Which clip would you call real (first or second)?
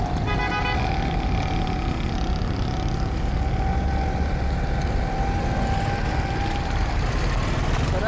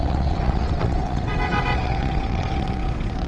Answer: first